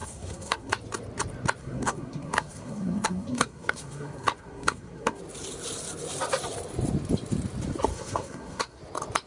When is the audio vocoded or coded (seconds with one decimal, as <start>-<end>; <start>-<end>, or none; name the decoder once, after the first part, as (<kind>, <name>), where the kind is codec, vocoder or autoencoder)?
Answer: 0.0-0.7 (codec, SNAC); 1.6-5.2; 7.9-8.8